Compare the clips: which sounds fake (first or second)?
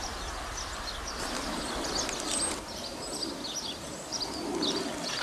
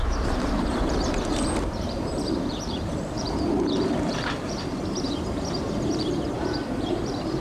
second